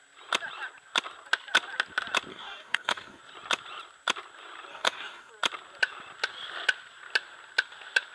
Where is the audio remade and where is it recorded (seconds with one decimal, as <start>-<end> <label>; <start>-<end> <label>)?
0.0-2.3 recorded; 2.3-3.2 remade; 3.2-4.7 recorded; 4.7-5.3 remade; 5.3-8.1 recorded